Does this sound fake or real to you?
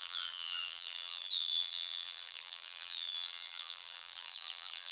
fake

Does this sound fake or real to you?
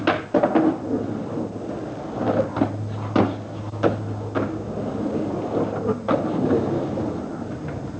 real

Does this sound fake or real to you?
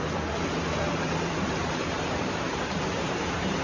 fake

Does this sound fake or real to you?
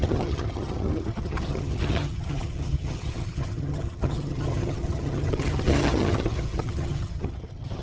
fake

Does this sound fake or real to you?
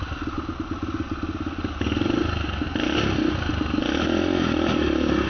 real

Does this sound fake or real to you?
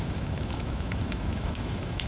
fake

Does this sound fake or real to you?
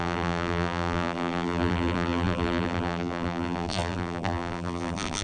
fake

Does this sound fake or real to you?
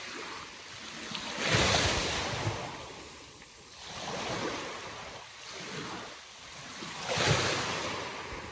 real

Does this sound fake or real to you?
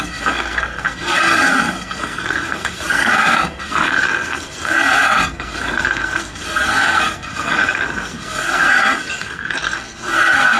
fake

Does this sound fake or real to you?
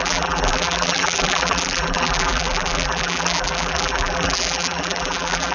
fake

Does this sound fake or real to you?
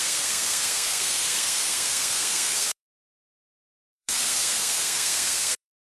fake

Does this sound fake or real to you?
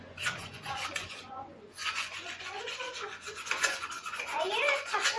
fake